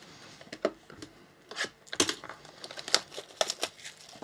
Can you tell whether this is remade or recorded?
recorded